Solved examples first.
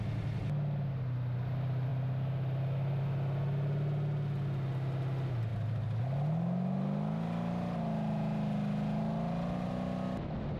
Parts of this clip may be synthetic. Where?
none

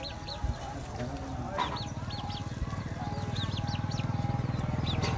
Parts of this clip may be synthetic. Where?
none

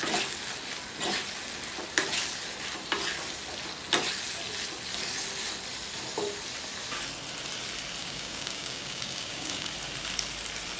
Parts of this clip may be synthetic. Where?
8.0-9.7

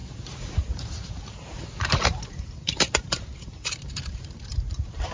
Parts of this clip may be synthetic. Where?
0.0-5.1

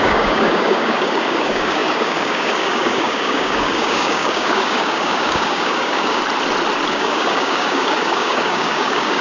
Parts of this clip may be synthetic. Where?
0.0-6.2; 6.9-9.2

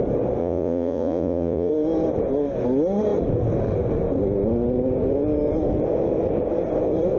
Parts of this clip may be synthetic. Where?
0.4-1.7

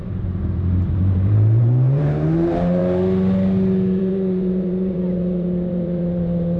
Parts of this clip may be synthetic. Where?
0.0-2.8; 4.0-6.6